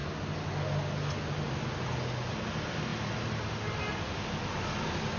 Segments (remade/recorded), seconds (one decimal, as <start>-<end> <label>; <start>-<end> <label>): 0.0-5.2 recorded